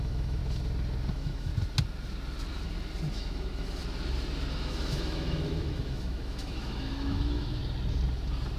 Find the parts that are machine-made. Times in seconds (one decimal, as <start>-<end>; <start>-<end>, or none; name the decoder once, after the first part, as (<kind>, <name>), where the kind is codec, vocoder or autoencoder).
0.0-0.4 (autoencoder, DAC-VAE); 1.1-1.5; 3.1-3.8; 4.5-7.6